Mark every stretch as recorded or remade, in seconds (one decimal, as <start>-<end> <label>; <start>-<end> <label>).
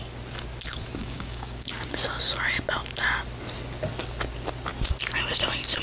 0.0-1.0 recorded; 1.0-1.9 remade; 1.9-5.8 recorded